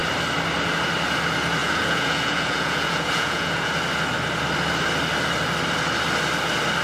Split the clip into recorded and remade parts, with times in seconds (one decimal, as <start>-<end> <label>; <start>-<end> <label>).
0.0-1.6 recorded; 1.6-3.7 remade; 3.7-6.8 recorded